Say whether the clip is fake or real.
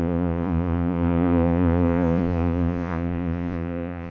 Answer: fake